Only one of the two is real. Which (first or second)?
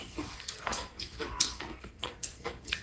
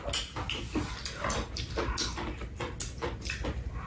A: second